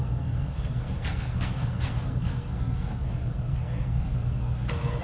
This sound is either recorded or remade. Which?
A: remade